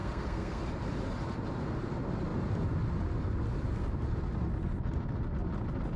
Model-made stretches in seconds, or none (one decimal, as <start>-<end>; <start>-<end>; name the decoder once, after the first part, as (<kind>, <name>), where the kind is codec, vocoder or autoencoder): 0.0-0.6 (codec, SNAC)